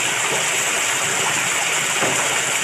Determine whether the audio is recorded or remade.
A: remade